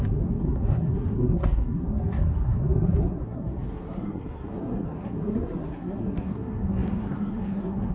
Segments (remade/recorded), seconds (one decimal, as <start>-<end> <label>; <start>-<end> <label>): 0.0-7.9 remade